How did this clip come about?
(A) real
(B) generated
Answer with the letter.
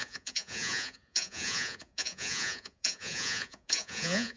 B